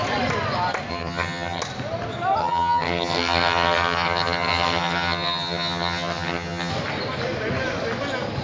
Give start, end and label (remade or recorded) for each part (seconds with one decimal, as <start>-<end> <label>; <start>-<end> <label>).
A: 0.0-0.9 recorded; 0.9-1.6 remade; 1.6-2.4 recorded; 2.4-6.7 remade; 6.7-8.4 recorded